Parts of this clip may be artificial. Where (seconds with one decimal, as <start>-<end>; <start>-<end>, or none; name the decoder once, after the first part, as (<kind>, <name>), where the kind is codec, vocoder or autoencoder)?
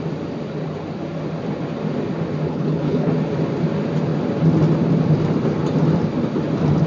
2.5-3.1 (codec, HILCodec)